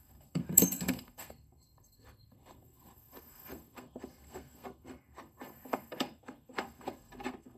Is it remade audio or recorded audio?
remade